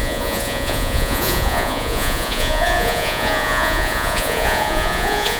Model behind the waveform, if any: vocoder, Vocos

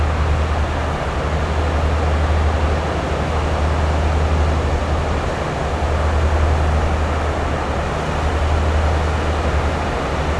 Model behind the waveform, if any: none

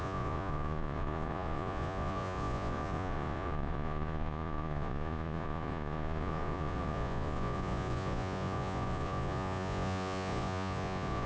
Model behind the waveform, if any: vocoder, Vocos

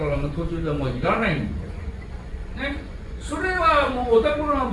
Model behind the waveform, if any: vocoder, Vocos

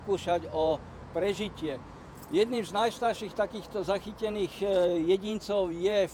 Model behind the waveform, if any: vocoder, Vocos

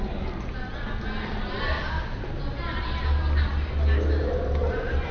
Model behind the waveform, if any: none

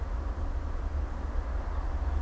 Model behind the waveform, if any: none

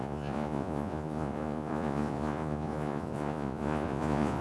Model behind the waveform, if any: vocoder, Vocos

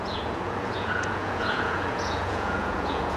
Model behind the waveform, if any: vocoder, Vocos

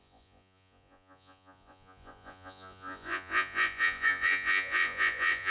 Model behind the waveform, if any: vocoder, Vocos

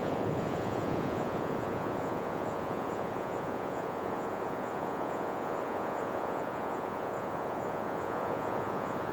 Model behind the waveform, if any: vocoder, Vocos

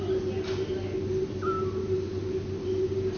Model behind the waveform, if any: none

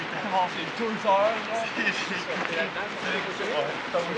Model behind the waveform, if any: none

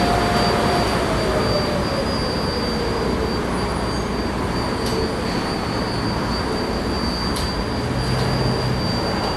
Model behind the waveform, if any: none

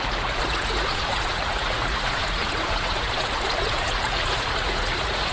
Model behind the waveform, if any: vocoder, Vocos